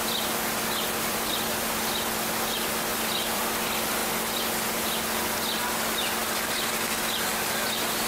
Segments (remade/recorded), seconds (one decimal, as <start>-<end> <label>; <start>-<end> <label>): 0.0-2.9 recorded; 2.9-3.5 remade; 3.5-8.1 recorded